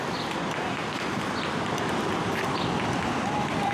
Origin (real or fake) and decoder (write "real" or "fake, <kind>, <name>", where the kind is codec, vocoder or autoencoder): fake, vocoder, BigVGAN v2